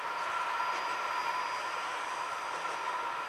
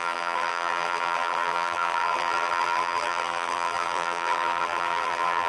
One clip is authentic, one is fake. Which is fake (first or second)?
second